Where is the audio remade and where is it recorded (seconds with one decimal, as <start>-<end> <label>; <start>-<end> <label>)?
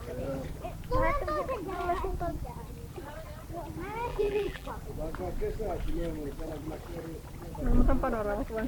0.0-4.1 recorded; 4.1-4.7 remade; 4.7-8.7 recorded